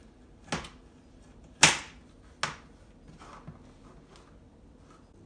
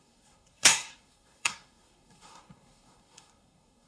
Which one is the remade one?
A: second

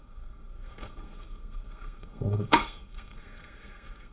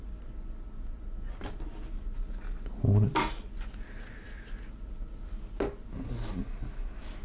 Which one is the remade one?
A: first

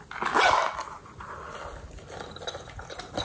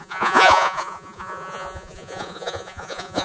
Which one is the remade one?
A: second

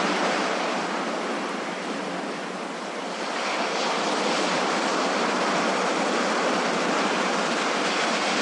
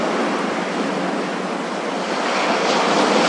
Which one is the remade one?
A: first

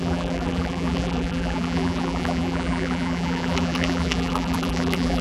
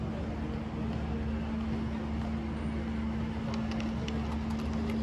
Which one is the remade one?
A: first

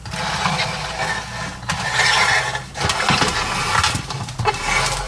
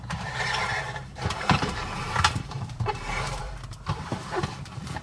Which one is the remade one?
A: second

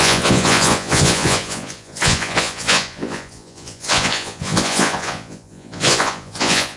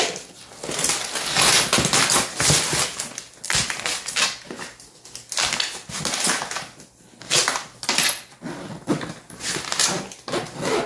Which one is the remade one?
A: first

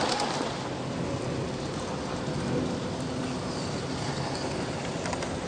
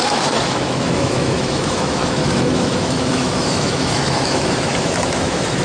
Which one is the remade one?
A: second